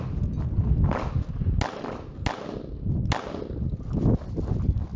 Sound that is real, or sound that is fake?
real